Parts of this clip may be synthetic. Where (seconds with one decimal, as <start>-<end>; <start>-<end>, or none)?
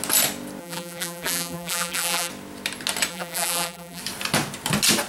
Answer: 0.6-2.3; 3.1-4.0